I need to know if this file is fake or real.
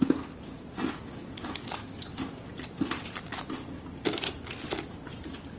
real